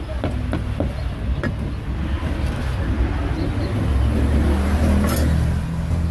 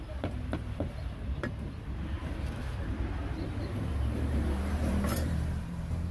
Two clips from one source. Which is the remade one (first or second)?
second